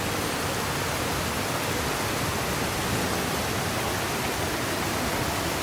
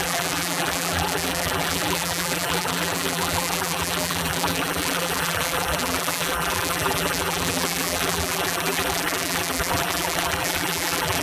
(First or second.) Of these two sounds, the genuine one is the first